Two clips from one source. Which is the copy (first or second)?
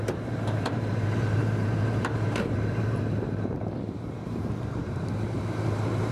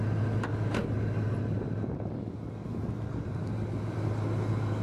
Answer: first